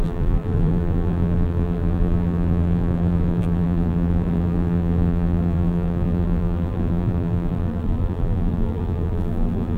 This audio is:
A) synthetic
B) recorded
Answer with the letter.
A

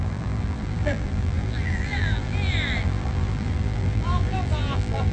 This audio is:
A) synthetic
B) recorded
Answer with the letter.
A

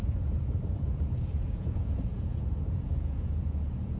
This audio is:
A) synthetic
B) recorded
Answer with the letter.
A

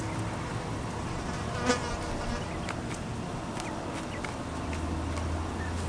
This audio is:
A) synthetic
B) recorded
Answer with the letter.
B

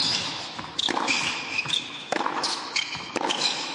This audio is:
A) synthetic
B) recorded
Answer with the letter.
A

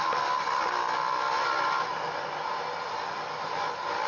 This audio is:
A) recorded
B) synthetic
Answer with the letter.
A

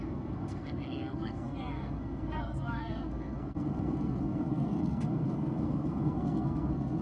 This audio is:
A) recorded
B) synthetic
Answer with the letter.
B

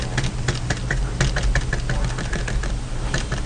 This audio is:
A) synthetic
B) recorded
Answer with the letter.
B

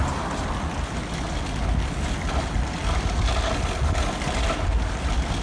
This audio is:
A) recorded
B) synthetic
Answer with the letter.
A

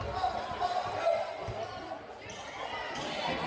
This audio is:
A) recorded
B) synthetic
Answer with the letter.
A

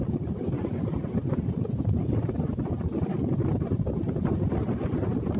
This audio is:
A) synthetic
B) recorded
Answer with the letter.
B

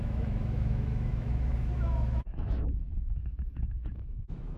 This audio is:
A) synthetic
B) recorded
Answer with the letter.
A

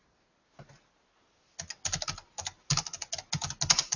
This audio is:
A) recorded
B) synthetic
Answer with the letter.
A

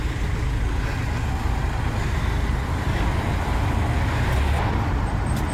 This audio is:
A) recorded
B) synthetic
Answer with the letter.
A